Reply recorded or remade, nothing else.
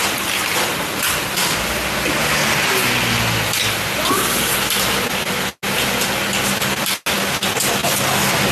recorded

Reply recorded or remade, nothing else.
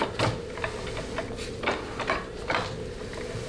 recorded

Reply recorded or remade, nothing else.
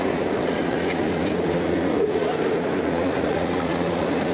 remade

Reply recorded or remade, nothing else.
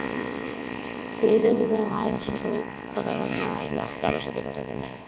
remade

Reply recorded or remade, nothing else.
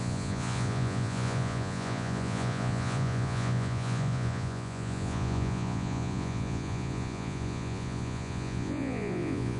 remade